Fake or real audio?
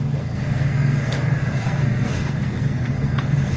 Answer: fake